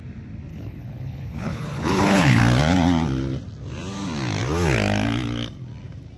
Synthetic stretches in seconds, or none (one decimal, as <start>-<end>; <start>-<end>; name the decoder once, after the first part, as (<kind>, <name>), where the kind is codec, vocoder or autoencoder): 0.5-2.4 (codec, HILCodec)

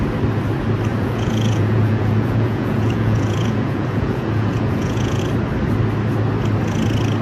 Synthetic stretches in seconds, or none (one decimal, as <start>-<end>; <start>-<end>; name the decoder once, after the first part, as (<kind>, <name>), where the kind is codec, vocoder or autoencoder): 0.9-5.2 (vocoder, Vocos)

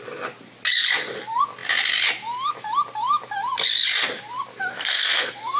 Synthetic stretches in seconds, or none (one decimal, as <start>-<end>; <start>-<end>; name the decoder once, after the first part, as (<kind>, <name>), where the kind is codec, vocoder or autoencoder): 4.7-5.6 (codec, SNAC)

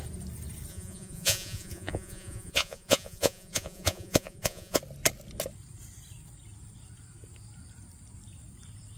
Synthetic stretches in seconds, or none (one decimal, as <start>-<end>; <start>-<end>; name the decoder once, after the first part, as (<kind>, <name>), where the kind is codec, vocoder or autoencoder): 0.7-4.8 (vocoder, Vocos)

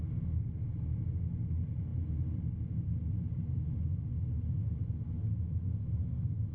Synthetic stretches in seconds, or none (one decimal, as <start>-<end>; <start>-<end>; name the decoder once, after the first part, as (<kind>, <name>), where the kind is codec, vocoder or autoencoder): none

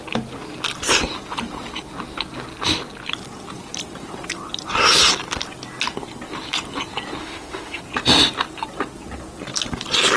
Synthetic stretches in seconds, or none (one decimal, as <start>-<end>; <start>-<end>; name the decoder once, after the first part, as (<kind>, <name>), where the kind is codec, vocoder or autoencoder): 7.2-7.8 (autoencoder, DAC-VAE)